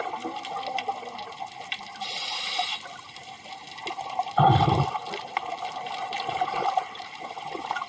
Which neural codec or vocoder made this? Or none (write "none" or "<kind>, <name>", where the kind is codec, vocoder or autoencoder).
none